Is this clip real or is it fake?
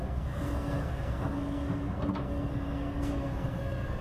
fake